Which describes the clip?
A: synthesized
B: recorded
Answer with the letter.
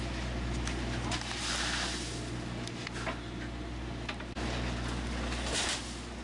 B